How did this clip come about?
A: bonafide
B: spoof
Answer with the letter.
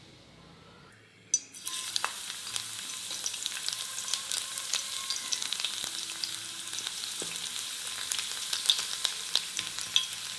A